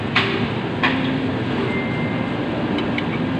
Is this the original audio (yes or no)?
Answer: yes